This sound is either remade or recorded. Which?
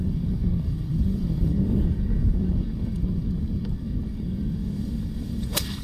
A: remade